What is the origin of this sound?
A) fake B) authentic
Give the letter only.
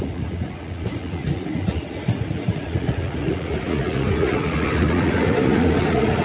A